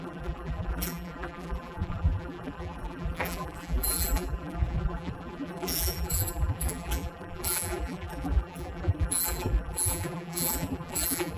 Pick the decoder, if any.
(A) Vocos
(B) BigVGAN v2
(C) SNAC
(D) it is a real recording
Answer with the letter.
B